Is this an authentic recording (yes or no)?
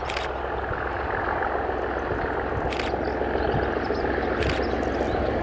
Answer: yes